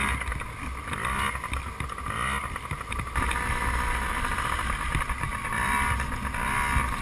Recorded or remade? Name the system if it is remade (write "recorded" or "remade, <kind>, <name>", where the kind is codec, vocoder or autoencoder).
recorded